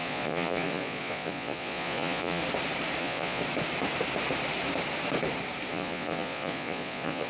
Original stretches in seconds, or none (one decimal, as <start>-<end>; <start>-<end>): 2.4-3.0; 3.4-5.7

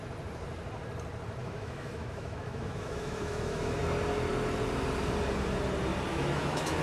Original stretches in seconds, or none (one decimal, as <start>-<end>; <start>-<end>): 0.0-1.4; 3.8-6.1